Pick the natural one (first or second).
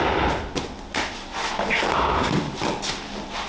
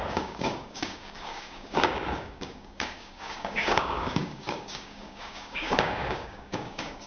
first